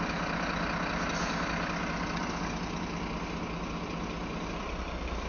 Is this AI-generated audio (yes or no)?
no